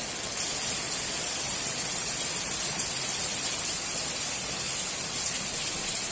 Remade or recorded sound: remade